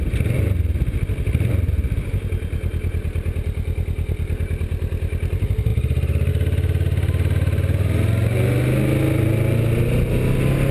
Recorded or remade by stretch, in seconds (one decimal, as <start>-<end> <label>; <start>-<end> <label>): 0.0-10.7 recorded